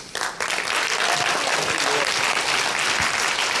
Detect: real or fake real